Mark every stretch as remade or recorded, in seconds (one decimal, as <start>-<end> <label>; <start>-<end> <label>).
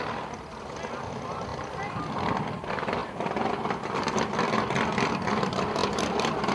0.0-1.5 recorded; 1.5-2.4 remade; 2.4-5.8 recorded; 5.8-6.5 remade